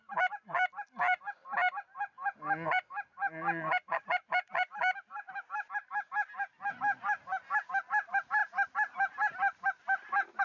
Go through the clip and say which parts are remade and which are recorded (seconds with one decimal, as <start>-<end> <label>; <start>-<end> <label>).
0.0-10.4 recorded